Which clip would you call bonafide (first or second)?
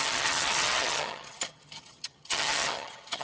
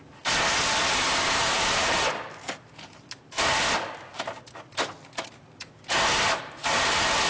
second